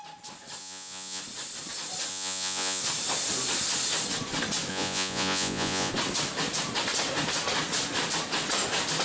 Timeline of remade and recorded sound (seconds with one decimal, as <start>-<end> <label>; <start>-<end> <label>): 0.0-0.6 recorded; 0.6-1.2 remade; 1.2-2.1 recorded; 2.1-2.8 remade; 2.8-4.7 recorded; 4.7-5.9 remade; 5.9-9.0 recorded